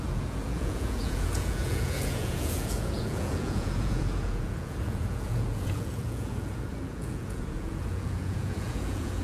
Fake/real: fake